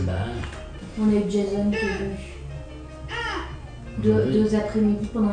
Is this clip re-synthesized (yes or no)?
no